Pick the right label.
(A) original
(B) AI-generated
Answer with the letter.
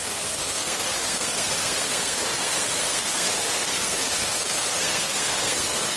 B